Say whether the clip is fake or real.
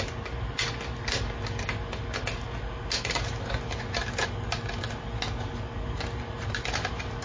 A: real